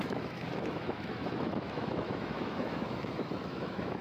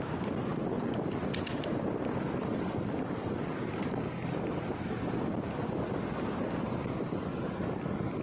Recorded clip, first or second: second